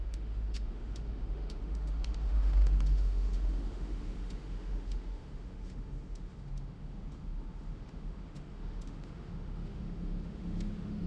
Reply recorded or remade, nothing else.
remade